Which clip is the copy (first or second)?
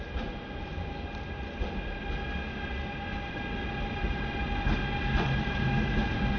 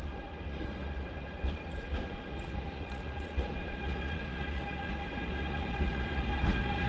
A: second